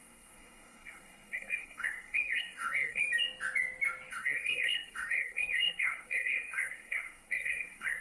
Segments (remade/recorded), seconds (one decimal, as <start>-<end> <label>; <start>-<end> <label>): 0.0-3.0 remade; 3.0-4.1 recorded; 4.1-8.0 remade